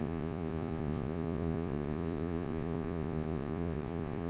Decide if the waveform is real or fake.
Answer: fake